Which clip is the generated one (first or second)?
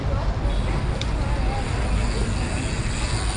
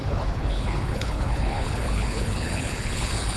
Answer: second